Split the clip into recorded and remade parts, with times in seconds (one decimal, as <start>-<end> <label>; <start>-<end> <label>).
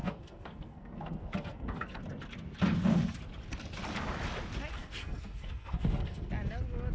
0.0-2.0 remade; 2.0-4.7 recorded; 4.7-6.3 remade; 6.3-6.9 recorded